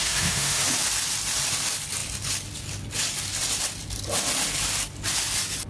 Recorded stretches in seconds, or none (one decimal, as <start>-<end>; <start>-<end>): 0.6-5.7

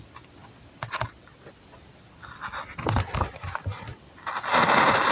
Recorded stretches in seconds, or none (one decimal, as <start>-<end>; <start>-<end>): 0.0-5.1

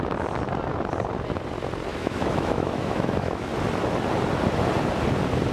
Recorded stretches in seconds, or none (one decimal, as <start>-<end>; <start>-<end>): 0.0-1.9; 3.5-5.5

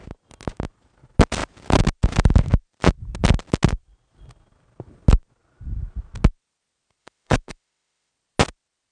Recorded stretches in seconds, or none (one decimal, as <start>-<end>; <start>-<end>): 0.0-7.0; 8.1-8.9

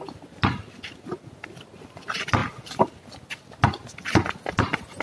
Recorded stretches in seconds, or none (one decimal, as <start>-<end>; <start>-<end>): 0.0-5.0

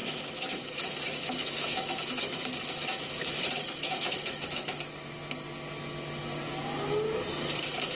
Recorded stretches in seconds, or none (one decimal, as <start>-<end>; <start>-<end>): 4.8-8.0

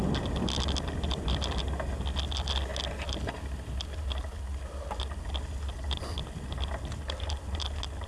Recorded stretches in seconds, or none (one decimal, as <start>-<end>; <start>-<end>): 0.0-8.1

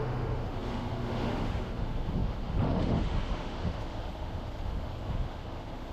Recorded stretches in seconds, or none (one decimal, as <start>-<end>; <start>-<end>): none